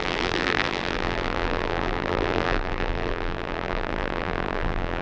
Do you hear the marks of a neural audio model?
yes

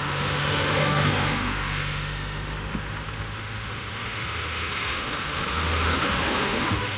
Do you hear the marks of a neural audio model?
yes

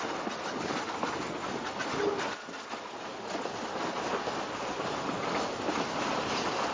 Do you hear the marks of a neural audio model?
no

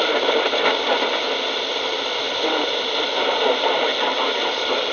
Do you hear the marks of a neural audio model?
no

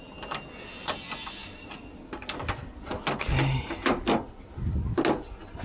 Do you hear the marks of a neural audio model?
no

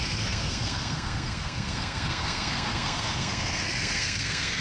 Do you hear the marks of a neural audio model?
yes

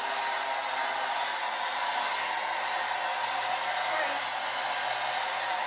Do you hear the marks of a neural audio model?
no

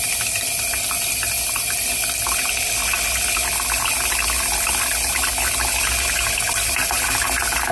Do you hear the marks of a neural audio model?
no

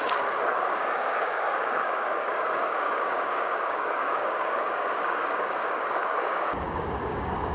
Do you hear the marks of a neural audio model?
yes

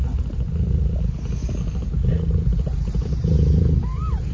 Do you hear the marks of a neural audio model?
no